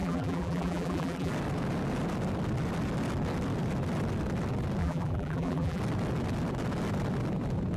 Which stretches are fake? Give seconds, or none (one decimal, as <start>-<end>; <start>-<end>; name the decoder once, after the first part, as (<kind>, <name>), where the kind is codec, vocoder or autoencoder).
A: 0.0-1.3 (vocoder, BigVGAN v2); 4.8-5.8